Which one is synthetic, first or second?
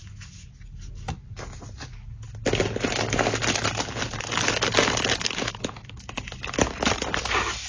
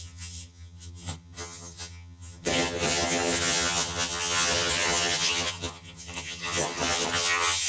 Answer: second